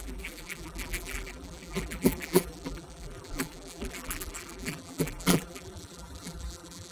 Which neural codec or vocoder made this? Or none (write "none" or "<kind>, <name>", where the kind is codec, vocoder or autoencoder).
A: vocoder, BigVGAN v2